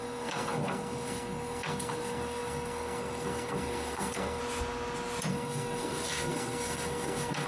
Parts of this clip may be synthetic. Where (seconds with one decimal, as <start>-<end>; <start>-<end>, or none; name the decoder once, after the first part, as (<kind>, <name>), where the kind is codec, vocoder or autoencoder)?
0.0-4.4 (codec, SNAC); 5.3-7.5